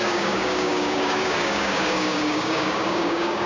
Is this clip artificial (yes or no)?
yes